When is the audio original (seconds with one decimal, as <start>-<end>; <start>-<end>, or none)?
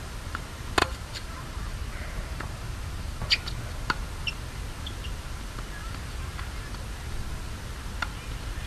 0.0-0.8; 3.3-5.8; 6.4-8.7